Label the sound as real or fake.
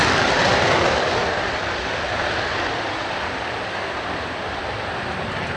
fake